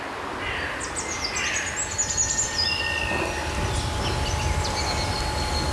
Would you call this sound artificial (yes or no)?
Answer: no